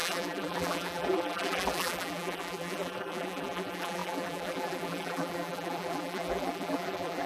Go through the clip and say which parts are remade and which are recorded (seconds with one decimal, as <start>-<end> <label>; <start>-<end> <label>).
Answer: 0.0-7.3 remade